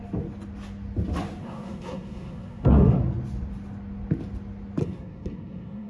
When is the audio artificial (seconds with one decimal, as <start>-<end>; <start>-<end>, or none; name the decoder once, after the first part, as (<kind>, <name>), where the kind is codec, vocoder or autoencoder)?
1.4-3.0 (codec, SNAC); 4.8-5.9